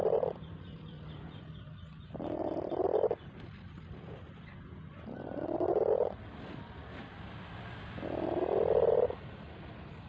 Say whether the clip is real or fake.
real